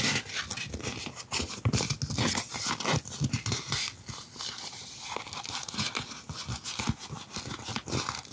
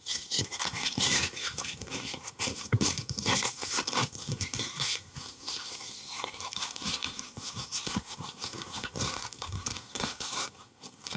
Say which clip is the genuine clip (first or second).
first